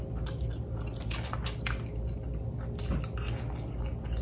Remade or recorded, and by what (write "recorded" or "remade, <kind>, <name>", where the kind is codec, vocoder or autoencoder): recorded